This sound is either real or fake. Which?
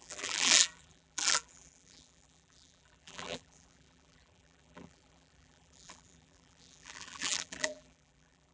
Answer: fake